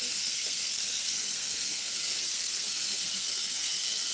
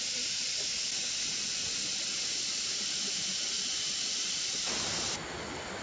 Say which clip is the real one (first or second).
second